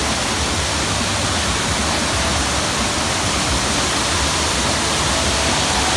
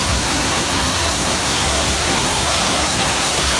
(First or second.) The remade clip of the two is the second